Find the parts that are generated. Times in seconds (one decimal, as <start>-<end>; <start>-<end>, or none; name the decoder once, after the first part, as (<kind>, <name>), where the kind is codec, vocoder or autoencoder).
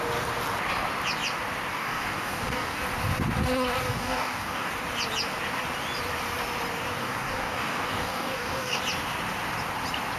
1.7-2.8 (codec, DAC); 3.9-4.7; 7.0-8.8